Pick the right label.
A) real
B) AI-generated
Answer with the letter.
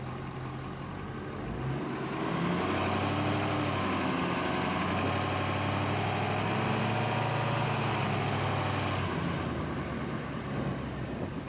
A